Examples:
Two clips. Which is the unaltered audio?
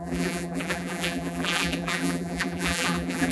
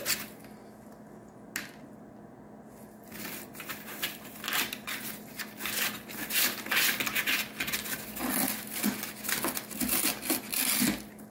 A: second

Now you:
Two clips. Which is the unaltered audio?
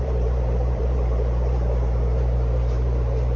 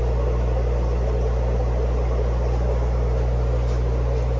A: second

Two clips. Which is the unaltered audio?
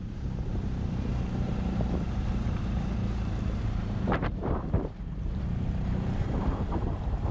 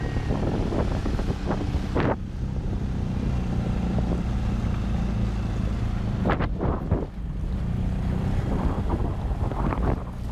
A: second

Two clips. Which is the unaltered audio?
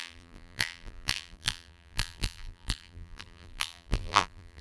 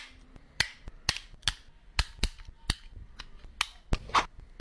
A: second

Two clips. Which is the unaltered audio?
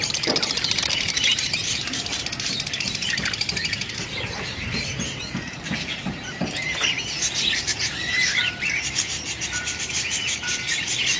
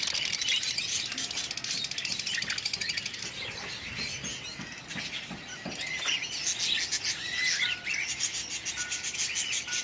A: second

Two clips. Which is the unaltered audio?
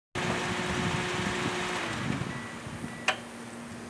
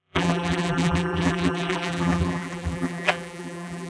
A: first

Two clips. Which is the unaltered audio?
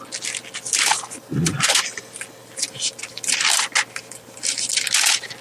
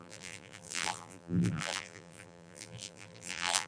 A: first